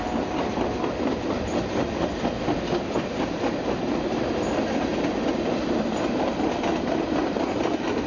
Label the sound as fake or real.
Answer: real